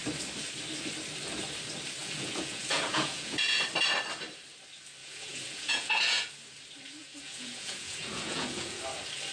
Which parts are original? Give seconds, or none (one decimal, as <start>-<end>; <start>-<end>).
0.0-2.0; 3.6-5.0; 6.3-7.0; 8.8-9.3